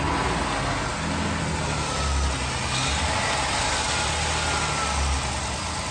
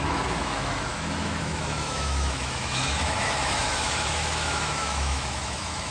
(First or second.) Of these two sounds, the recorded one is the first